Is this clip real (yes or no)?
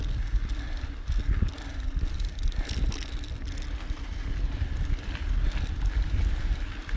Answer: yes